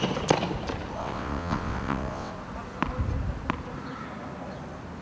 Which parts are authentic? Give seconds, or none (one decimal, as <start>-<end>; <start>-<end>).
0.0-1.0; 2.3-5.0

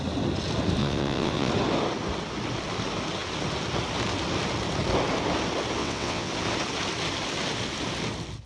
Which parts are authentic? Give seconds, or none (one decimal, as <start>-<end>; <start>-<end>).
0.0-0.8; 1.5-5.8; 6.3-8.5

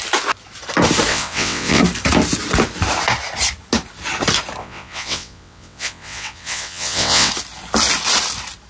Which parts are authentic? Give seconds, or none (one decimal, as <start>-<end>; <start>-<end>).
0.0-1.1; 1.8-4.6; 7.3-8.7

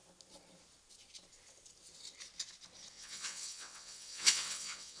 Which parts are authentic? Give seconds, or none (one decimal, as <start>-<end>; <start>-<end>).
0.0-2.9